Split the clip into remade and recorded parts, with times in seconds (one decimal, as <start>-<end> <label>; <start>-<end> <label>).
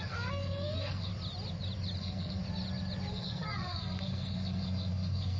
0.0-1.1 remade; 1.1-2.0 recorded; 2.0-2.4 remade; 2.4-3.1 recorded; 3.1-5.4 remade